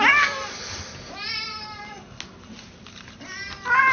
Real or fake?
real